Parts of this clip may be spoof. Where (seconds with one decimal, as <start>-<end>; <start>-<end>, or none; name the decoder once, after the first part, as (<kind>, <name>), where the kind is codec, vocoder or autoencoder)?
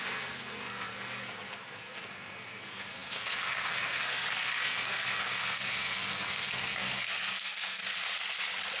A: 0.0-7.8 (codec, SNAC)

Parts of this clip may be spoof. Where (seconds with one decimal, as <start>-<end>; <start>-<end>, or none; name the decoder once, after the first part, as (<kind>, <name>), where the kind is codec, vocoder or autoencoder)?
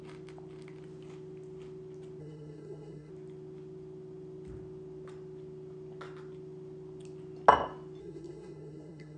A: 2.2-3.1 (codec, SNAC); 8.0-9.2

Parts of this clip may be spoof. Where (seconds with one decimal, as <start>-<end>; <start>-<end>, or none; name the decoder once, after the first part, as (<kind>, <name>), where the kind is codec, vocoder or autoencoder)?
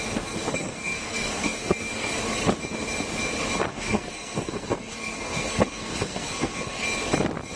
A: 0.5-2.1 (codec, SNAC); 3.7-6.8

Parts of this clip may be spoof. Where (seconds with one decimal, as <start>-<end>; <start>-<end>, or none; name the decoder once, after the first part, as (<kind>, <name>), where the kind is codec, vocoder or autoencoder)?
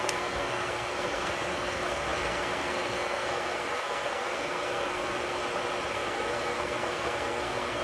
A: 0.0-5.4 (codec, SNAC); 5.9-7.8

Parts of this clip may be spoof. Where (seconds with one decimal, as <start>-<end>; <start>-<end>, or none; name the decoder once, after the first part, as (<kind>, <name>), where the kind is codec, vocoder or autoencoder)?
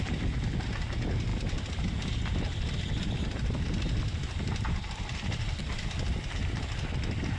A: none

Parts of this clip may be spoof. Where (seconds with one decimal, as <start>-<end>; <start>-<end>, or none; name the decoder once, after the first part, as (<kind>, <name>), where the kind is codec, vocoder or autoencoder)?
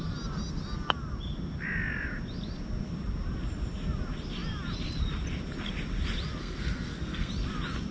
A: 6.4-7.3 (codec, SNAC)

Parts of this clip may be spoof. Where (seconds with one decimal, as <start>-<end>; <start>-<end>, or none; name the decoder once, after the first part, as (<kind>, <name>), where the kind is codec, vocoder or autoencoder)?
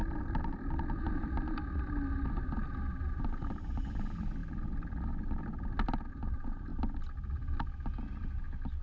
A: none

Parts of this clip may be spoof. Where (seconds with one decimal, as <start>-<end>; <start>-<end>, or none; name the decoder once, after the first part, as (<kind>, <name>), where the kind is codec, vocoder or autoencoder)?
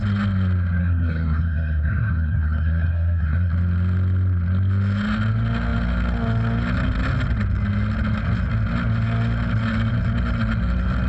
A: 0.8-3.5 (codec, SNAC)